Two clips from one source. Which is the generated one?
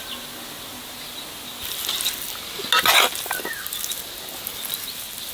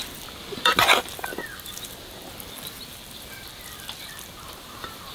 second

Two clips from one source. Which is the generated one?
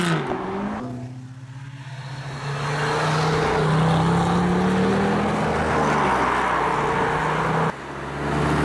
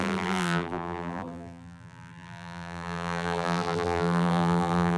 second